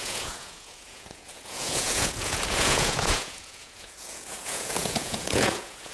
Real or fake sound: fake